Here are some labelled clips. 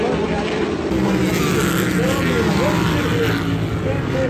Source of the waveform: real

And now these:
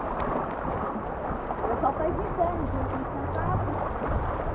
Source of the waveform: real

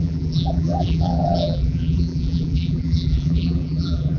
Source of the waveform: fake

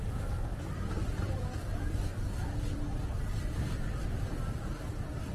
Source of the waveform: fake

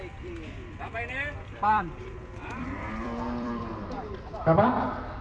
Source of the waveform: fake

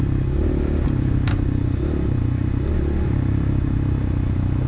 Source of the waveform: real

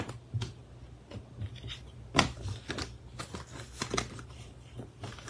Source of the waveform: real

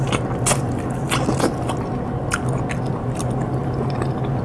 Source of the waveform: real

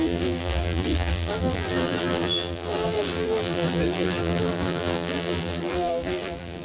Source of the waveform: fake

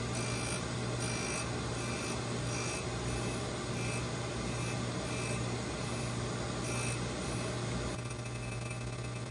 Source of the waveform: real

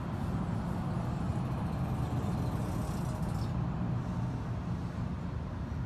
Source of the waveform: real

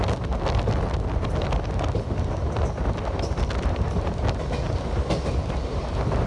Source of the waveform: real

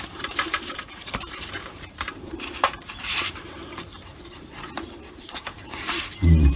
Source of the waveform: fake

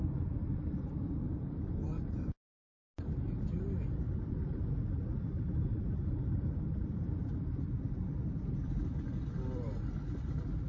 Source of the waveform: real